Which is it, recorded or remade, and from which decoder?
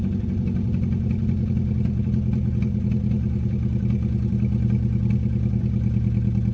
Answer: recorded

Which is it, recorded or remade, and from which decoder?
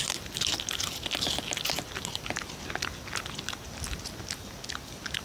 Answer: recorded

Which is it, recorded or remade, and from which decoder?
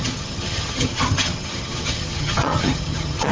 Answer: remade, vocoder, HiFi-GAN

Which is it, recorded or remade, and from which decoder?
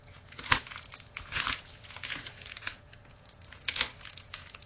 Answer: remade, vocoder, Vocos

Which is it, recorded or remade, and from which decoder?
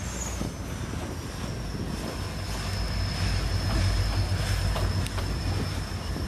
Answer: recorded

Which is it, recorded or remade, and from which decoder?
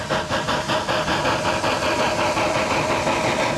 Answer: recorded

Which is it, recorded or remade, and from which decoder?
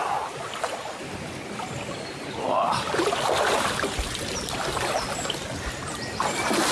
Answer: remade, vocoder, BigVGAN v2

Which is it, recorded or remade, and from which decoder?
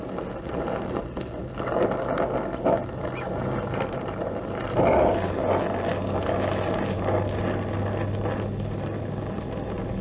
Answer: recorded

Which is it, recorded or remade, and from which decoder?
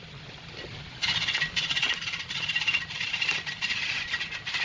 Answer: recorded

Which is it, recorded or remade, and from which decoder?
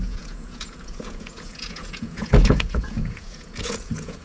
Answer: remade, vocoder, Vocos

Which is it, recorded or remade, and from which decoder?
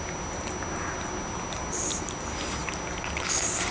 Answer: recorded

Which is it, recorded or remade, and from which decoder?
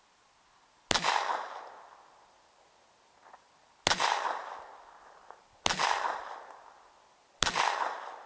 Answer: recorded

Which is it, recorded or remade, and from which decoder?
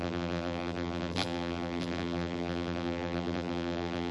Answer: remade, vocoder, BigVGAN v2